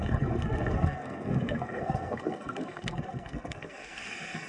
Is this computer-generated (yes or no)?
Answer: yes